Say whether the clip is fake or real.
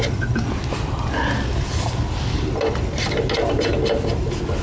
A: real